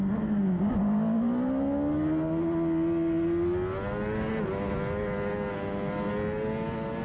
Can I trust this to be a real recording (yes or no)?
yes